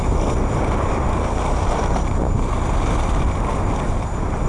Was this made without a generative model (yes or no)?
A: yes